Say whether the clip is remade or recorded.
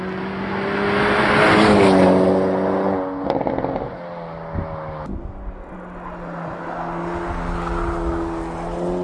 recorded